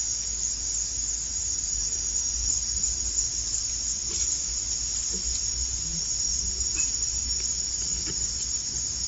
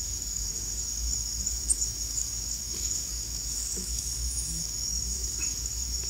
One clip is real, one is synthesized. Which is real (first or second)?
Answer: first